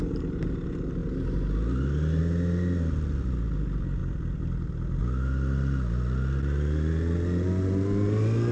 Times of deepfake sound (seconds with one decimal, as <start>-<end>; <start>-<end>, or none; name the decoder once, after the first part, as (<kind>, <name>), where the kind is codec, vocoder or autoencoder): none